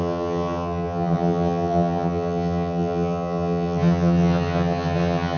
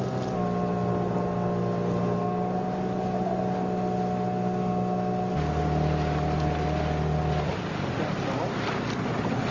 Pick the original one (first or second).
second